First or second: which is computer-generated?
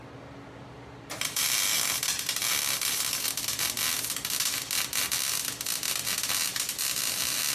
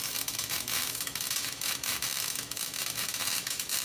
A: second